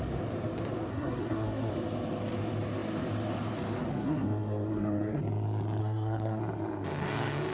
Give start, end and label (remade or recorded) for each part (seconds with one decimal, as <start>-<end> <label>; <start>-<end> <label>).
0.0-0.9 recorded; 0.9-1.7 remade; 1.7-3.9 recorded; 3.9-5.2 remade; 5.2-5.8 recorded; 5.8-6.4 remade; 6.4-7.5 recorded